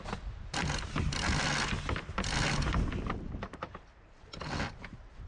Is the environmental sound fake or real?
real